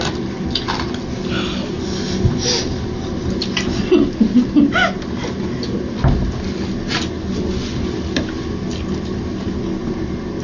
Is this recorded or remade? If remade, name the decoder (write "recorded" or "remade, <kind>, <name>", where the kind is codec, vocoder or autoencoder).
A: recorded